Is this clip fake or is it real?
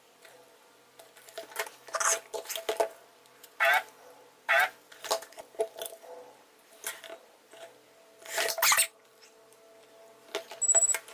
real